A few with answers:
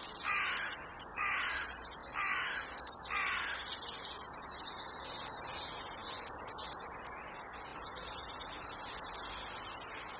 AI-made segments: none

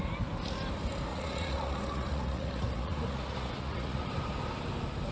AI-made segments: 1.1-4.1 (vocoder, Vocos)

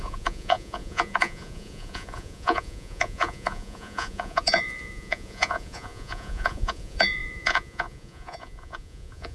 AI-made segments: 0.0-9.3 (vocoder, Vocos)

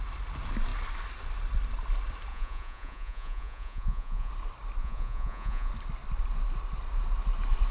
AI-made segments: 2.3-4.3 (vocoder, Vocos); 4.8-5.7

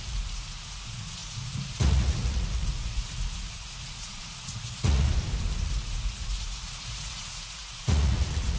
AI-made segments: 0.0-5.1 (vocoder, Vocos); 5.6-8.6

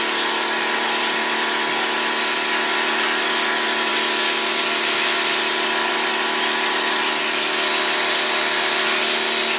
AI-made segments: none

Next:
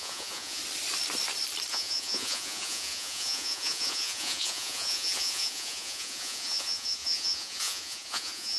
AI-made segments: 0.0-0.6 (vocoder, Vocos); 1.7-8.6

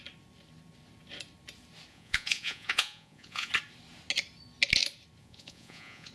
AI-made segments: 1.9-3.5 (vocoder, Vocos); 5.2-6.1